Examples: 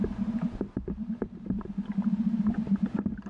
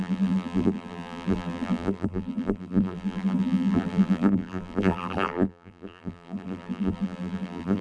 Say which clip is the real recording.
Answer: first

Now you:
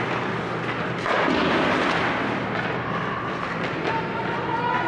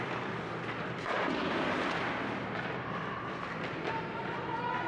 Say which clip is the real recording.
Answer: first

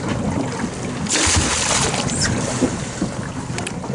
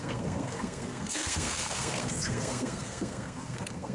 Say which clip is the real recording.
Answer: first